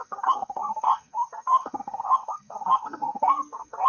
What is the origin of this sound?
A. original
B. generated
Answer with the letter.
B